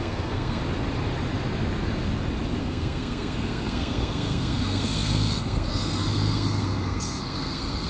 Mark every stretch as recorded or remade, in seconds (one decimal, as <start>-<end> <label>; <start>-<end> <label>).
0.0-0.6 remade; 0.6-2.6 recorded; 2.6-7.9 remade